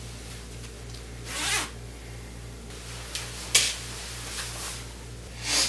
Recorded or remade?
recorded